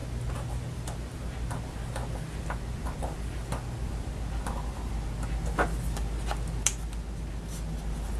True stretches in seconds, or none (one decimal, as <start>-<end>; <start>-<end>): 0.0-8.2